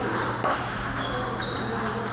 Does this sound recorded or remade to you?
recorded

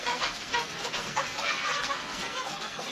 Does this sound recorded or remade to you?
remade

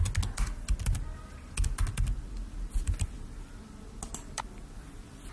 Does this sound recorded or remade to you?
recorded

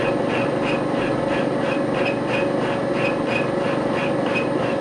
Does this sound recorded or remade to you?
recorded